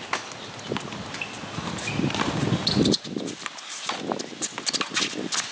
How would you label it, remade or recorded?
recorded